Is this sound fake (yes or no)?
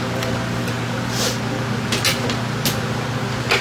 no